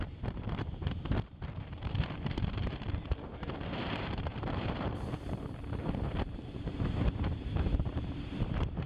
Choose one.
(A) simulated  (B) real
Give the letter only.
A